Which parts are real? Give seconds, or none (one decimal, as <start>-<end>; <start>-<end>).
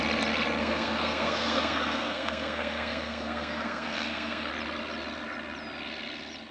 0.0-0.6; 4.5-6.5